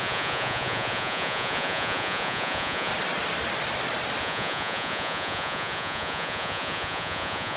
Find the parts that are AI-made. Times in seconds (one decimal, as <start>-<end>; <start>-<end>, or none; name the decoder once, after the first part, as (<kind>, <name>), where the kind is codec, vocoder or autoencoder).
0.0-2.9 (vocoder, Vocos); 4.2-7.6